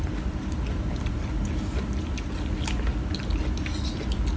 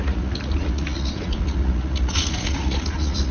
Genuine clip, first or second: first